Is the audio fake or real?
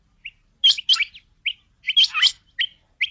real